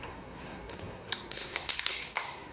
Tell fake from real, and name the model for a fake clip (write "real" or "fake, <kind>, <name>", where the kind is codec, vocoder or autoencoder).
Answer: fake, codec, SNAC